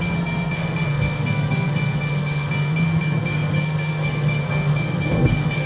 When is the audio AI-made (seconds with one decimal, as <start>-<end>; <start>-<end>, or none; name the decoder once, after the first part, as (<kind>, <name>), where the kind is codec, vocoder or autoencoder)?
0.0-5.7 (codec, SNAC)